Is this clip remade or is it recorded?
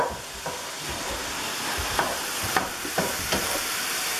remade